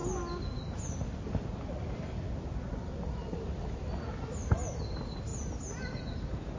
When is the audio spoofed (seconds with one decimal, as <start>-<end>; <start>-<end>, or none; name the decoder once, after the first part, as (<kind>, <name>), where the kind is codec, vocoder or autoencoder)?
none